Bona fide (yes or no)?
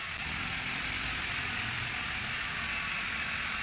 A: yes